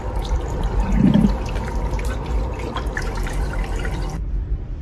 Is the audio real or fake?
fake